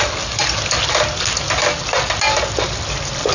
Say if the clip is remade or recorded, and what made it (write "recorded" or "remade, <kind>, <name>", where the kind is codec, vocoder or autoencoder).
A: recorded